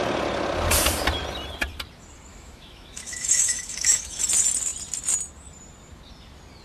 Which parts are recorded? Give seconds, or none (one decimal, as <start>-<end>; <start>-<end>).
0.0-2.3; 4.2-6.6